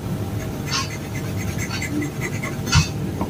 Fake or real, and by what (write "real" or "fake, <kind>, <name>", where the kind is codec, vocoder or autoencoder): real